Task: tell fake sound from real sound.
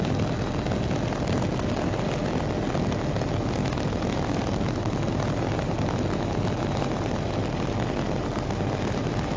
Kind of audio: real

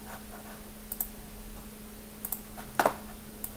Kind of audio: real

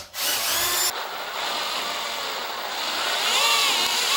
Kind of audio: real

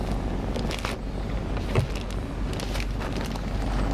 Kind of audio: real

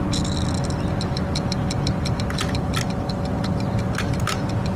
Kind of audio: real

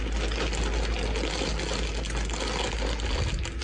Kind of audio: real